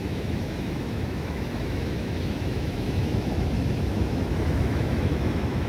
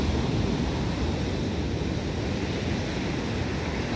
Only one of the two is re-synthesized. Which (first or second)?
first